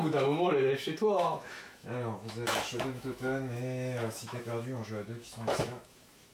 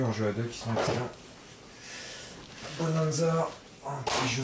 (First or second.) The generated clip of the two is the first